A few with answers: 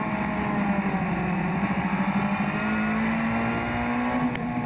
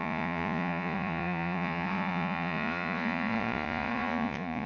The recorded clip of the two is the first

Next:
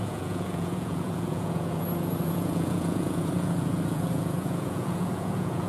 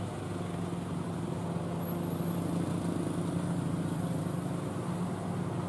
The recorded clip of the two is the second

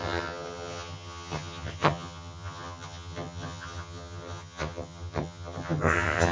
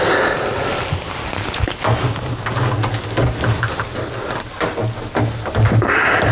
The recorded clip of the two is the second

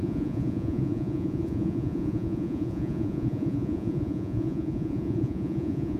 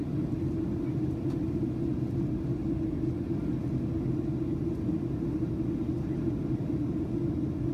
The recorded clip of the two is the second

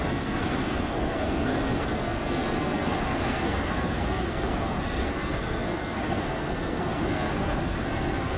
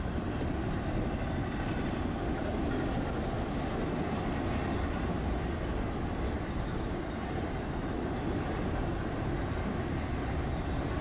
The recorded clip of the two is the second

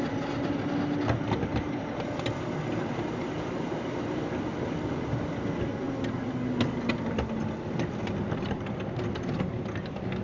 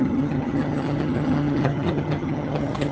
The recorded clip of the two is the first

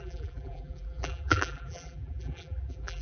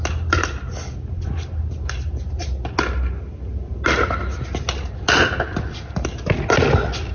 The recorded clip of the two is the second